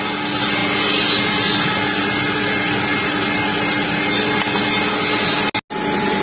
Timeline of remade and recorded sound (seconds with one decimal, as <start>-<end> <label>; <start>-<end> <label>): 0.0-6.2 recorded